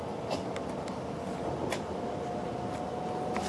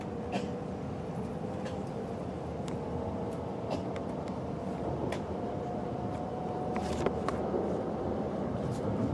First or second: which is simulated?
second